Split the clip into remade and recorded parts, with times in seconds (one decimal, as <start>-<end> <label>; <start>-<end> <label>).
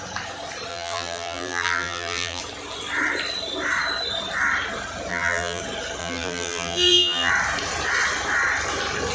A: 0.0-0.7 recorded; 0.7-2.4 remade; 2.4-5.1 recorded; 5.1-5.6 remade; 5.6-6.0 recorded; 6.0-7.3 remade; 7.3-9.1 recorded